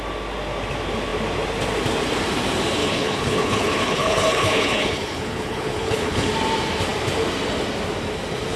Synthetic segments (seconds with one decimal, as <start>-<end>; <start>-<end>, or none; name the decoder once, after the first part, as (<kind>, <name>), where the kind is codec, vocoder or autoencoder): 2.8-6.3 (codec, HILCodec)